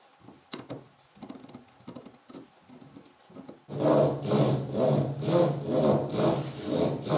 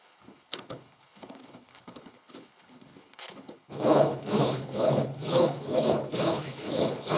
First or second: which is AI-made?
second